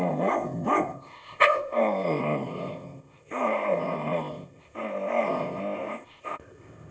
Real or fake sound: fake